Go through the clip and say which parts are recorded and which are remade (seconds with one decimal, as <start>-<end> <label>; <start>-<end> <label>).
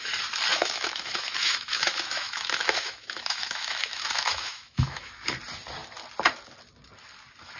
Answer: 0.0-0.5 recorded; 0.5-5.1 remade; 5.1-7.6 recorded